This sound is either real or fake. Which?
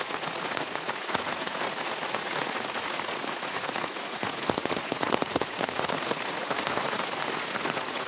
fake